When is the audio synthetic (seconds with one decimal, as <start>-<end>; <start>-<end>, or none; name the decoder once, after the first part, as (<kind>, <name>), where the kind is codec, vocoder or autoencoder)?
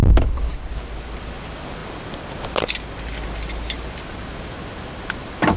none